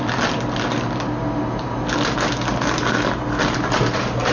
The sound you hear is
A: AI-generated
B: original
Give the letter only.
B